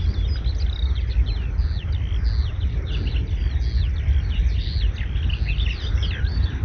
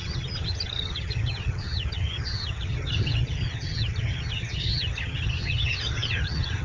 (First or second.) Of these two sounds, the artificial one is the second